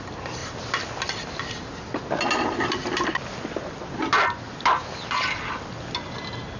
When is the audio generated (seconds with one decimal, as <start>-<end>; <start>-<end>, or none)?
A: none